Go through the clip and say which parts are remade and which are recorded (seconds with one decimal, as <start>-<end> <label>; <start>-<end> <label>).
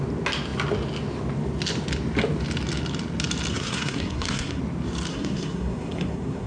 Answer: 0.0-3.5 recorded; 3.5-4.6 remade; 4.6-5.1 recorded; 5.1-6.5 remade